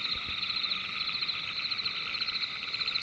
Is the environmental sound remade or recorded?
remade